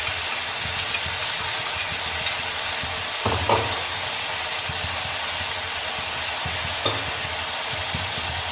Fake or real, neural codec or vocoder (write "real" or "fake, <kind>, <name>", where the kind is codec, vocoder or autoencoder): real